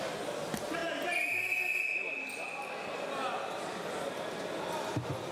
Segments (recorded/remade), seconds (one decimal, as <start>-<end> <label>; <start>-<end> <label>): 0.0-5.3 recorded

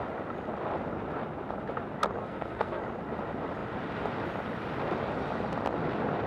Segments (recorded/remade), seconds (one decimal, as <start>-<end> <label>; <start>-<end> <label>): 0.0-2.2 recorded; 2.2-2.8 remade; 2.8-6.3 recorded

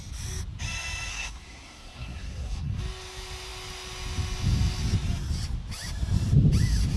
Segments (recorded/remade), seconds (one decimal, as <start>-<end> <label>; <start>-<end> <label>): 0.0-1.1 recorded; 1.1-2.8 remade; 2.8-7.0 recorded